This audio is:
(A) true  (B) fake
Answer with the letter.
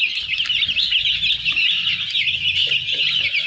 A